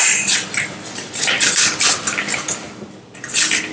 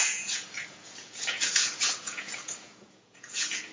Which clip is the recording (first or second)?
first